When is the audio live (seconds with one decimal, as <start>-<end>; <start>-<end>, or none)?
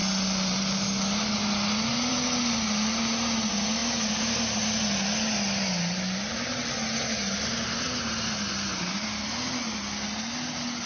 0.0-10.9